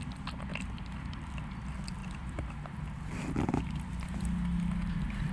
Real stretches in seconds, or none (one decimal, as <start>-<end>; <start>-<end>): 0.0-0.5; 1.3-2.0; 3.1-5.3